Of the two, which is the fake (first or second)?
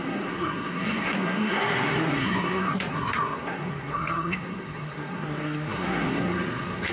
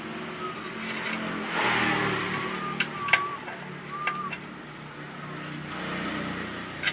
first